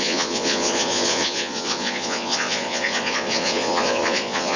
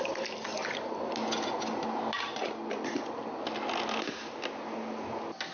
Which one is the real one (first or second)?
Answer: second